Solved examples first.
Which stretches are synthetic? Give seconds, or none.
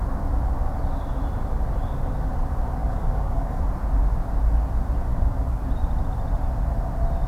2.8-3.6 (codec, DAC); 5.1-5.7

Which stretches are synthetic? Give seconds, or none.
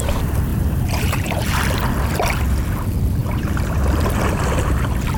0.5-1.5 (vocoder, BigVGAN v2); 3.2-4.2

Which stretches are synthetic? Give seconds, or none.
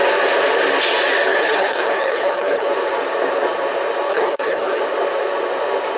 1.3-2.7 (codec, HILCodec); 4.1-4.8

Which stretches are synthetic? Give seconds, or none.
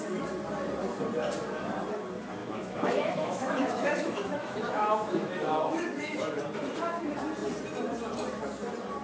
2.4-6.4 (autoencoder, DAC-VAE)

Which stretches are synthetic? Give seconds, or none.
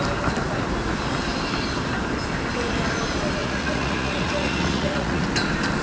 3.4-5.2 (vocoder, Vocos)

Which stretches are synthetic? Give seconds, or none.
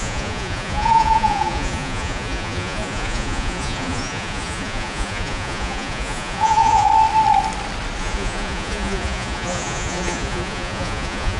0.0-6.9 (vocoder, Vocos); 8.0-11.4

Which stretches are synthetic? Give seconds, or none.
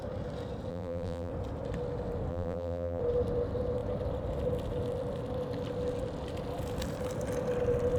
0.7-1.3 (vocoder, BigVGAN v2); 2.3-3.0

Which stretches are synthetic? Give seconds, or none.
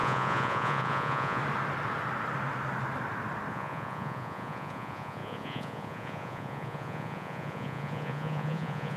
0.0-1.4 (vocoder, Vocos); 3.5-9.0